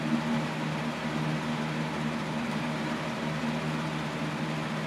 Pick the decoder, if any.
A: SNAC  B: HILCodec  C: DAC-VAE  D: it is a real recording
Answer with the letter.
D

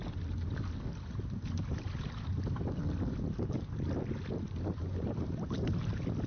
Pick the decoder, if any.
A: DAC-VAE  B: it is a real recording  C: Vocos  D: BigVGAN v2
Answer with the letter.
B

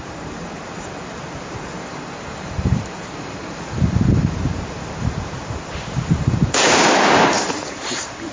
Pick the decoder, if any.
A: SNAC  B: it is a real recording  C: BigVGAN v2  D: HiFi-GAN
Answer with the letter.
C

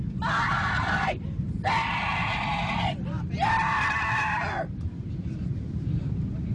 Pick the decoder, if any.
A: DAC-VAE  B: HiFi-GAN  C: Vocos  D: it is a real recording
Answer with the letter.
D